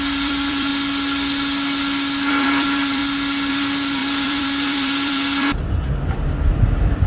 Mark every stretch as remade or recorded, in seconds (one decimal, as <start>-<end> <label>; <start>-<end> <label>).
0.0-0.7 remade; 0.7-2.3 recorded; 2.3-3.0 remade; 3.0-3.5 recorded; 3.5-7.1 remade